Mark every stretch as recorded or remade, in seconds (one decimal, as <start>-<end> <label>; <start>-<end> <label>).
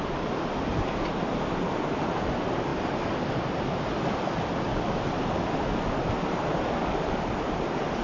0.0-8.0 recorded